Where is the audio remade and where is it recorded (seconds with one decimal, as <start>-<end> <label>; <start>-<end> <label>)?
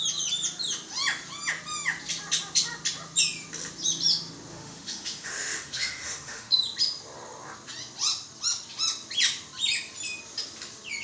0.0-4.5 recorded; 4.5-6.5 remade; 6.5-11.0 recorded